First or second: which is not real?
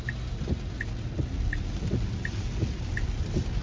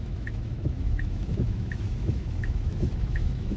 second